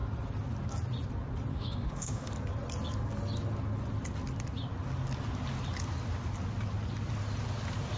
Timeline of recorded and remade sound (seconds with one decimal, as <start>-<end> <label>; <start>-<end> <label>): 0.0-1.5 recorded; 1.5-2.3 remade; 2.3-8.0 recorded